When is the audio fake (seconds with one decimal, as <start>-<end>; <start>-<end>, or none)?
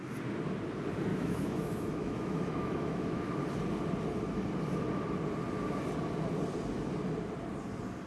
1.1-3.2